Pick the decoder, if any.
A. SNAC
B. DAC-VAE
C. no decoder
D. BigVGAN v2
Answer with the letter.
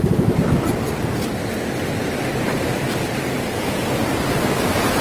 C